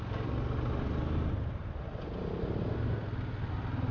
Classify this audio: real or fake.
real